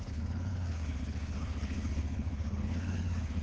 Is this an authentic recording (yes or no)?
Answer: no